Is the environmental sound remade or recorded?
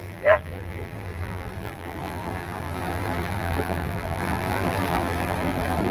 remade